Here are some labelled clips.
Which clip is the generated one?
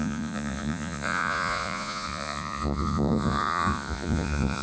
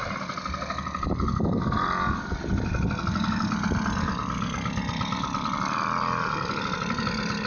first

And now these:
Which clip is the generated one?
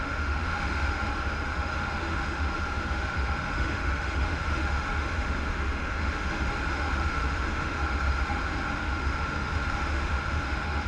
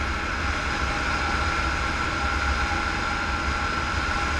first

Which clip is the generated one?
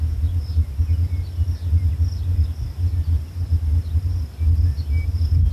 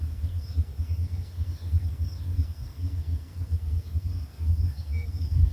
second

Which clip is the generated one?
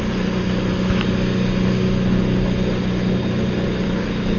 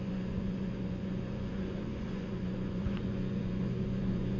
second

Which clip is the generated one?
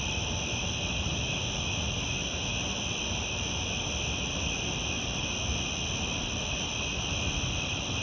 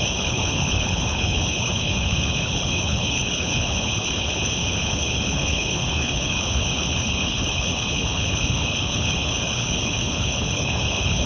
second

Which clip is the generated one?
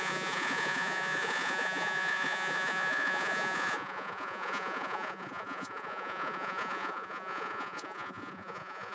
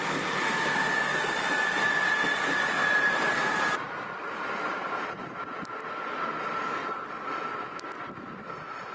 first